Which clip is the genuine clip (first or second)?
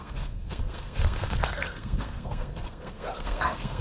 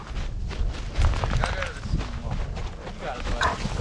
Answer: second